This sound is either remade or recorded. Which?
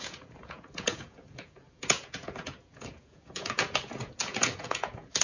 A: remade